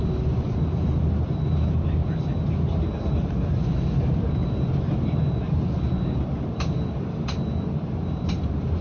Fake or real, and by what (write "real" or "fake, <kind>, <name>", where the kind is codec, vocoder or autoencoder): fake, vocoder, BigVGAN v2